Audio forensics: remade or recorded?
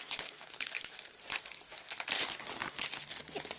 recorded